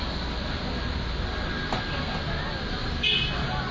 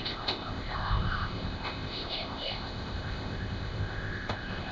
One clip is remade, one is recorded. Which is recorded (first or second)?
first